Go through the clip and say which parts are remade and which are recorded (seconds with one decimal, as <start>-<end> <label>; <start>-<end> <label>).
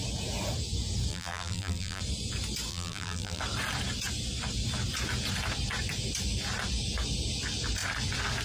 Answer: 0.0-1.1 recorded; 1.1-2.0 remade; 2.0-2.7 recorded; 2.7-3.4 remade; 3.4-8.4 recorded